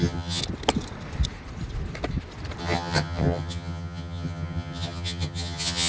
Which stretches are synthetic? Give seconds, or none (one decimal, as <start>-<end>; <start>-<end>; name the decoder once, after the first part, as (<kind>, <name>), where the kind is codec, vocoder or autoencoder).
0.0-0.4 (vocoder, HiFi-GAN); 2.6-5.9